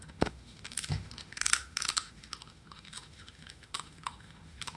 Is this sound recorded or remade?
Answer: remade